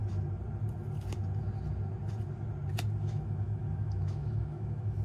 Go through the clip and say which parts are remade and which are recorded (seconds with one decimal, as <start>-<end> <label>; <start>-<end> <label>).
0.0-3.0 recorded; 3.0-5.0 remade